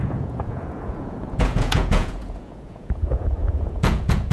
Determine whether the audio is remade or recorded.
remade